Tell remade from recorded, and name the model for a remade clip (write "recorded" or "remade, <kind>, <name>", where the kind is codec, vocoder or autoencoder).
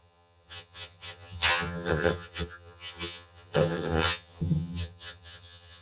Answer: remade, vocoder, HiFi-GAN